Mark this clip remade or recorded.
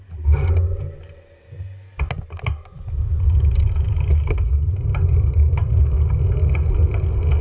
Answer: recorded